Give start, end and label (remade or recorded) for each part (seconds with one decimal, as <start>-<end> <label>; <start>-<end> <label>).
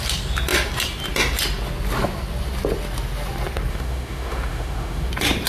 0.0-3.7 recorded; 3.7-5.1 remade; 5.1-5.5 recorded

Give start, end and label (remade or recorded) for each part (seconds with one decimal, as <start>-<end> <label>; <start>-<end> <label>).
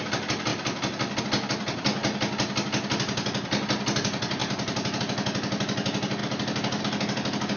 0.0-7.6 recorded